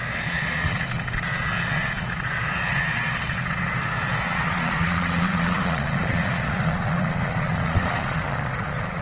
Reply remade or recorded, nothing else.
remade